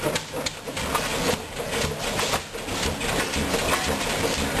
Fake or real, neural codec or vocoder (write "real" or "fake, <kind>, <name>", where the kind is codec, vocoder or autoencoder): real